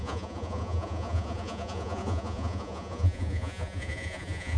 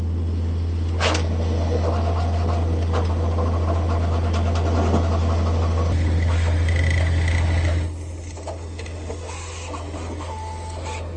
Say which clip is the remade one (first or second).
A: first